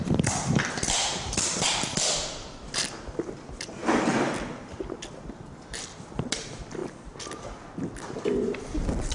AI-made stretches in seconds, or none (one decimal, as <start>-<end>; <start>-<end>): 0.0-6.8; 8.2-9.1